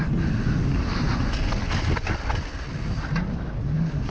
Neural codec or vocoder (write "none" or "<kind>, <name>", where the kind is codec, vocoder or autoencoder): none